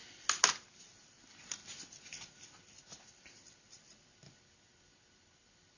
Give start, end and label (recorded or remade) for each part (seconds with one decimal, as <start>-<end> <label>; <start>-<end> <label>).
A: 0.0-5.8 recorded